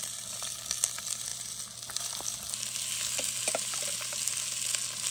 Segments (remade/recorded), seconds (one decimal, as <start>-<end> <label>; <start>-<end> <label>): 0.0-5.1 recorded